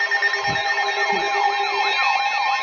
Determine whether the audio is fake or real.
real